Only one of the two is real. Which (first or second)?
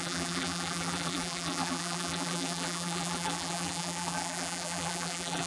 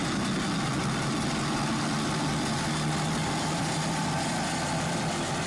second